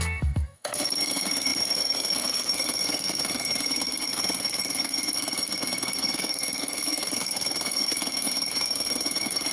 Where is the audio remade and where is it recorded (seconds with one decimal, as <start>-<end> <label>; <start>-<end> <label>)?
0.0-9.5 remade